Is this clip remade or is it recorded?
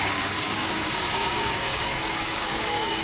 remade